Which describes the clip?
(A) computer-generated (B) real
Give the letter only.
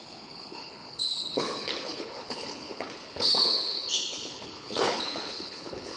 A